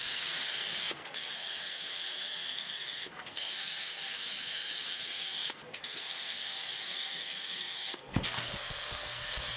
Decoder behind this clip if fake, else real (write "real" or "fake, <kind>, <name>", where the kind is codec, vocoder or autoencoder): fake, codec, SNAC